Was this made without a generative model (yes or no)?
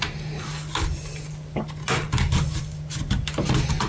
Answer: yes